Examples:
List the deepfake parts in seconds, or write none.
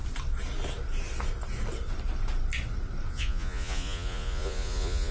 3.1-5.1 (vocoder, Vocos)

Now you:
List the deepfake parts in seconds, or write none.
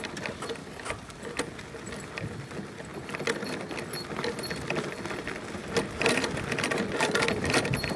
none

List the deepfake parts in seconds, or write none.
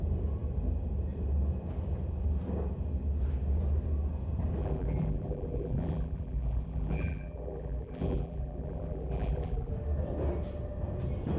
4.6-9.7 (vocoder, BigVGAN v2)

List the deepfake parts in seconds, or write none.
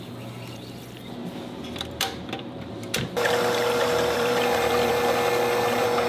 1.2-4.9 (vocoder, BigVGAN v2)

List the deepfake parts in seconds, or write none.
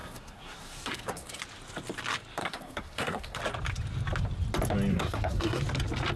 0.0-1.4 (codec, SNAC); 2.4-3.4; 4.9-5.6